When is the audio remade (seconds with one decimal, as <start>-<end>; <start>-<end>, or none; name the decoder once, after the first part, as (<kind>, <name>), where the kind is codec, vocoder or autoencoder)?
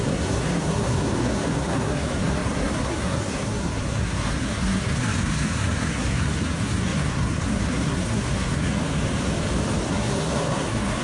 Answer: 0.0-8.8 (codec, SNAC); 9.9-11.0